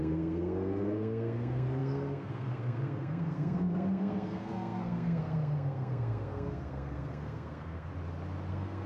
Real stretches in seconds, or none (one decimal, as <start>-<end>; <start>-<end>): 7.9-8.5